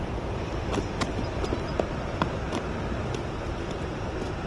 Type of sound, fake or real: real